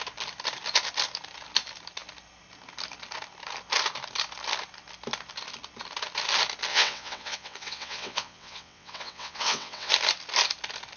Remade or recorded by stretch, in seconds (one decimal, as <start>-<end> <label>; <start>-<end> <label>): 0.0-6.7 recorded; 6.7-9.9 remade; 9.9-11.0 recorded